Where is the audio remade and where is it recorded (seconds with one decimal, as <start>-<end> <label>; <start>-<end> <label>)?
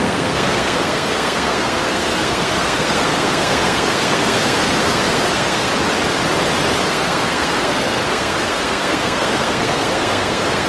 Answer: 0.0-5.7 remade; 5.7-6.8 recorded; 6.8-10.7 remade